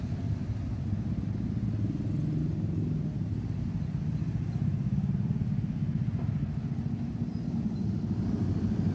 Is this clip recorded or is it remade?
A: recorded